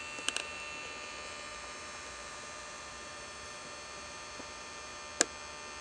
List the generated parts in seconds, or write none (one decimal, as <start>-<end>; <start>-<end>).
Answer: 1.5-5.0